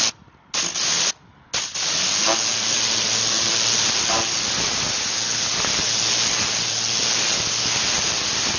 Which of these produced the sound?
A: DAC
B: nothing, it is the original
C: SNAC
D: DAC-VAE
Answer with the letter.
B